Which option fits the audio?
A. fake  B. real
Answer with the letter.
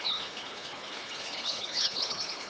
A